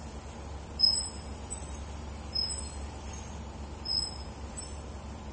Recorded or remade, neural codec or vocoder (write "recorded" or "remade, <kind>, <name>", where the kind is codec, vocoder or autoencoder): recorded